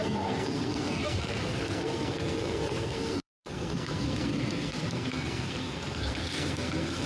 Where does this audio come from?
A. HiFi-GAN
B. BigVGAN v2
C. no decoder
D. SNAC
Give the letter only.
D